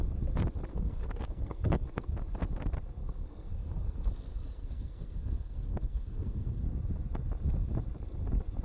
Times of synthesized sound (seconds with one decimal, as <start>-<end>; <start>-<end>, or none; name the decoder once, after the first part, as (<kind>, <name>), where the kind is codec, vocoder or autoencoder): 0.7-2.1 (codec, SNAC); 3.0-6.6